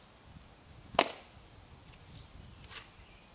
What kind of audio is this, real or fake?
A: real